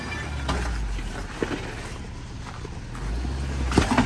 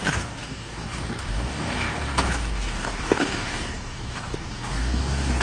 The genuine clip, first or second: first